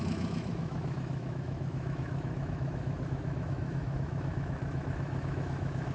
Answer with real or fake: fake